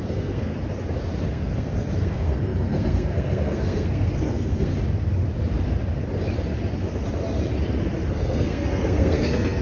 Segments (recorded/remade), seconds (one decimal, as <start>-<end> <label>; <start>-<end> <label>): 0.0-0.5 remade; 0.5-1.3 recorded; 1.3-4.7 remade; 4.7-8.1 recorded; 8.1-9.6 remade